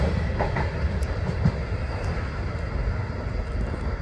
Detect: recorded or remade recorded